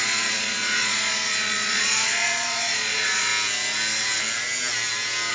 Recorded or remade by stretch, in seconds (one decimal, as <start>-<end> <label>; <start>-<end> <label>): 0.0-3.3 remade; 3.3-5.3 recorded